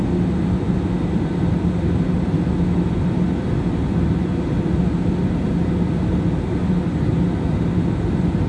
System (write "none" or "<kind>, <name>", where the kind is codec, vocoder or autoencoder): none